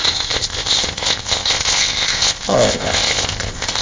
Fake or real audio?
fake